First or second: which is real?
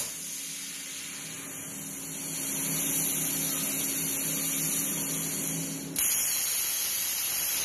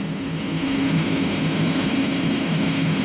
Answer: first